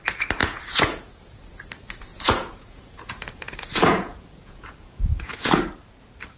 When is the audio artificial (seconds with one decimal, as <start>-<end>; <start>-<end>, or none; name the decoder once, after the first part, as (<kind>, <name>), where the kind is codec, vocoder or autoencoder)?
0.4-1.1 (vocoder, Vocos); 2.1-5.6